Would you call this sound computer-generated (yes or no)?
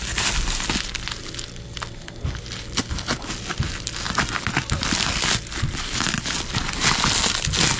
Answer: no